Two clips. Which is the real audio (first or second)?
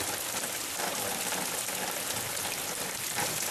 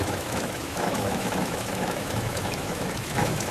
first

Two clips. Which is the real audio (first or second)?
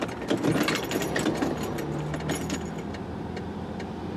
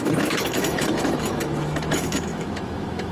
first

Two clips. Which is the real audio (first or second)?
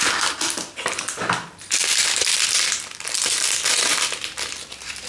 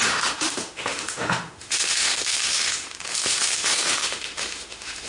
first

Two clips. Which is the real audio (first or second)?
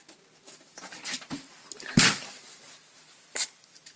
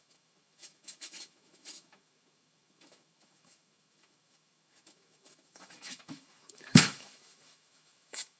first